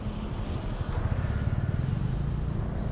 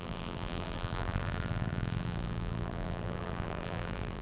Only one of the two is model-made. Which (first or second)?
second